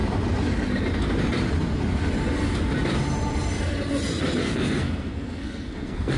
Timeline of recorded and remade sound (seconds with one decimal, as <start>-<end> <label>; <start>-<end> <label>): 0.0-4.4 recorded; 4.4-6.2 remade